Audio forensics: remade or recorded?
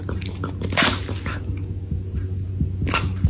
recorded